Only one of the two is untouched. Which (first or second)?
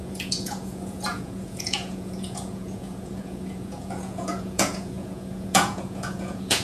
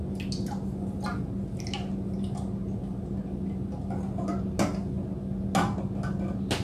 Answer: second